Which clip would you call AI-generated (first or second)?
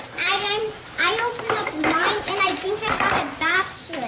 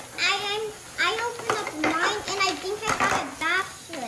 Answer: first